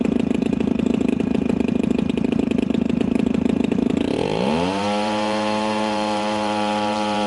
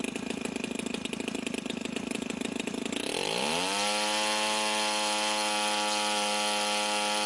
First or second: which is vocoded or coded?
first